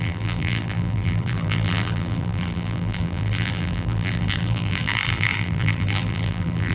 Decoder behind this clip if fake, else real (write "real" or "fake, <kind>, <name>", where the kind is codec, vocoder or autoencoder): fake, vocoder, BigVGAN v2